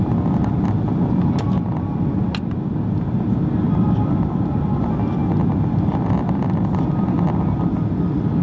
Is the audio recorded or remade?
recorded